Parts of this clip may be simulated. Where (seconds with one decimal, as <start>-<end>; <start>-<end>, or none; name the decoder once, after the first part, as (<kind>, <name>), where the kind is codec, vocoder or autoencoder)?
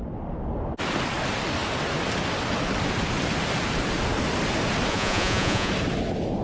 4.9-5.7 (vocoder, Vocos)